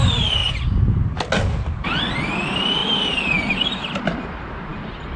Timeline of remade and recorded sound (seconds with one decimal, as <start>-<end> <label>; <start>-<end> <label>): 0.0-5.2 recorded